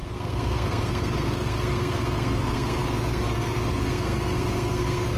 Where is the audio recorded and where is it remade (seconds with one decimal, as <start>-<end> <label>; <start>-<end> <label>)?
0.0-5.2 remade